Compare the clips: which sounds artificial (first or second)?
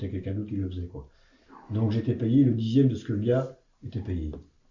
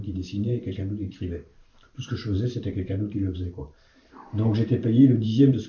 second